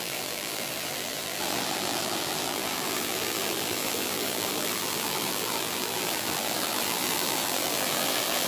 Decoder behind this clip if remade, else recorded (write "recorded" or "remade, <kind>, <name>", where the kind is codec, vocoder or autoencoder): remade, vocoder, BigVGAN v2